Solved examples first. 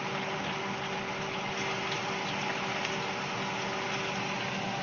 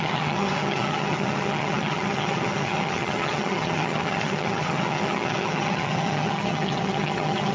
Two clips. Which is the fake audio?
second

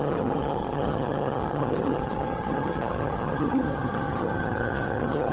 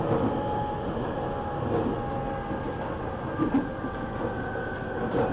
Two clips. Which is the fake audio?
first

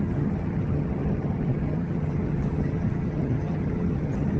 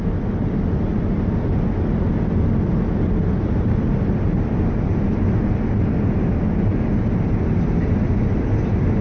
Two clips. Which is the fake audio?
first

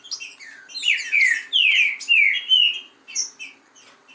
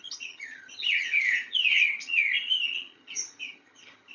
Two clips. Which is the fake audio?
second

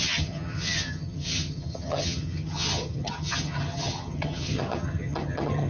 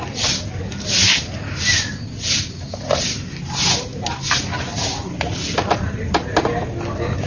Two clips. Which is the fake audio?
first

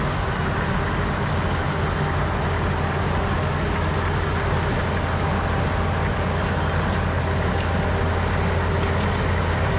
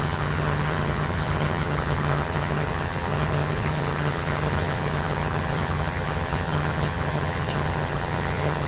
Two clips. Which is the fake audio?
second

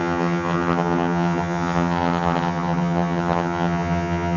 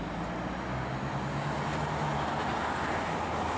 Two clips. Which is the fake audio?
first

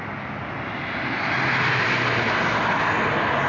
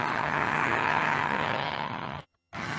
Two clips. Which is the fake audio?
second